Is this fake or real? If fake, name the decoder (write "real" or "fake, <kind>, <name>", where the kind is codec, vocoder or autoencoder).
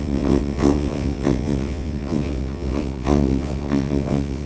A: fake, vocoder, WaveNeXt